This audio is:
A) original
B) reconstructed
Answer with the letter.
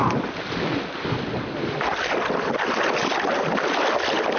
A